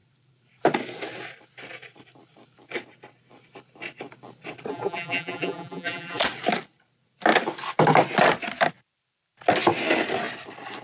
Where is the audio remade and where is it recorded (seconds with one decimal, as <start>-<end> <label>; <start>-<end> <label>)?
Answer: 0.0-4.7 recorded; 4.7-6.2 remade; 6.2-10.8 recorded